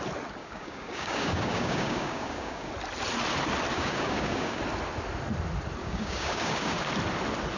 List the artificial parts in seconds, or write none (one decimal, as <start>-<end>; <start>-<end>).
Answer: 0.4-2.7; 3.7-4.6; 5.8-6.9